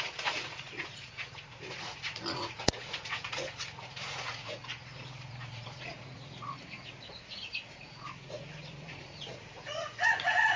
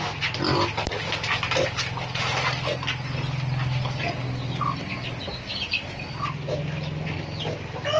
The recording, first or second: second